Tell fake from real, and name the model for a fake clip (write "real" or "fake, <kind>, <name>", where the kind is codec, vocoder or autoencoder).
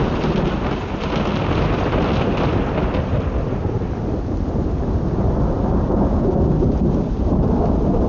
real